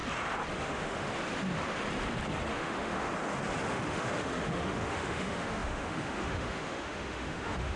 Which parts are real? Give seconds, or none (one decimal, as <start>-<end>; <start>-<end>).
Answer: 0.0-0.6; 1.1-2.5; 3.1-3.7